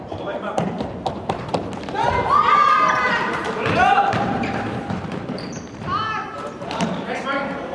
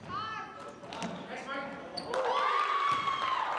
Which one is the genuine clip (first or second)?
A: second